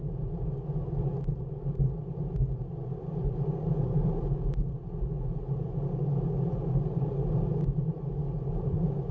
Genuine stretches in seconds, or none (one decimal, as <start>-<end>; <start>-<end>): 0.0-9.1